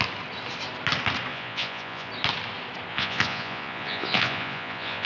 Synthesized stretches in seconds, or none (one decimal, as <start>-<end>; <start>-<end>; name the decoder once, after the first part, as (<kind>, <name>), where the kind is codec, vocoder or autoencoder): 1.3-2.1 (vocoder, Vocos); 2.9-5.1